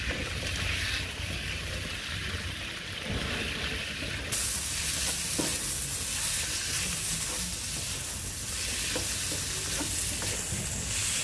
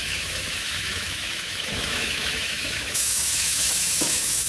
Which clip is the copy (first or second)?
second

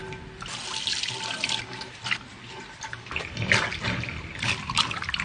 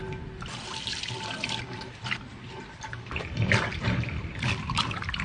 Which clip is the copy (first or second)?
second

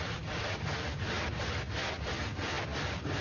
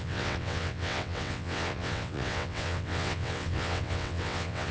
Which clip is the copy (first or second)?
second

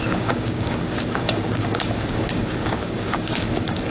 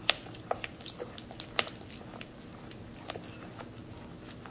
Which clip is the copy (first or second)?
first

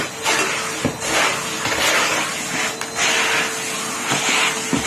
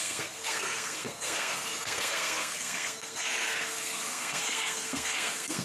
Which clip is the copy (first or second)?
second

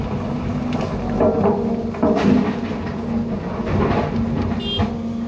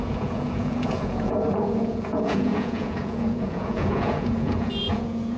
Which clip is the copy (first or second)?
second